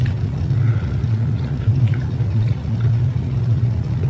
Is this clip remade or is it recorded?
remade